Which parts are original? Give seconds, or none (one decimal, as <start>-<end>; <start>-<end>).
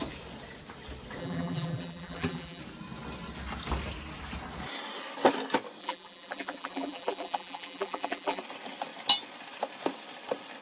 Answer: 0.0-1.2; 2.6-5.8; 8.4-10.6